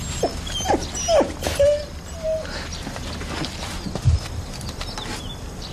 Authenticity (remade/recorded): recorded